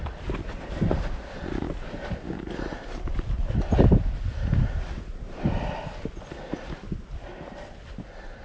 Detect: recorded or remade recorded